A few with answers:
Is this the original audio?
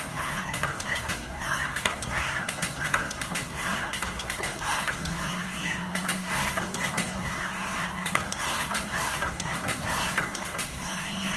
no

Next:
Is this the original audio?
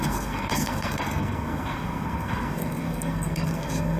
no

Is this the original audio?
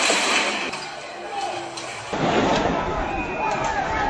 yes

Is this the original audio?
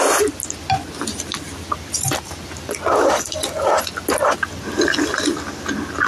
yes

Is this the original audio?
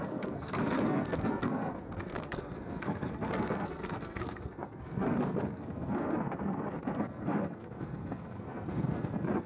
no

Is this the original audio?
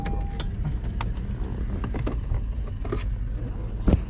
yes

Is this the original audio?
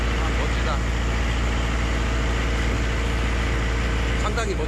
yes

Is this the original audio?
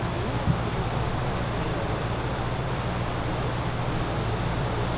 yes